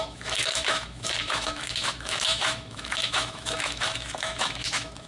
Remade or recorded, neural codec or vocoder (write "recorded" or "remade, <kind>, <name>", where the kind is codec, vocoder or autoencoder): remade, autoencoder, DAC-VAE